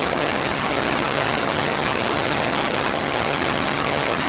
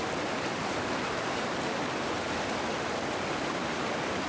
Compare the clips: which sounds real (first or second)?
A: second